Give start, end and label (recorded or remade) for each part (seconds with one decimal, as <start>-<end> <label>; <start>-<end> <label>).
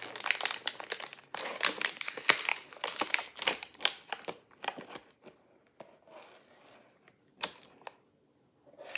0.0-1.1 recorded; 1.1-2.0 remade; 2.0-2.5 recorded; 2.5-3.8 remade; 3.8-9.0 recorded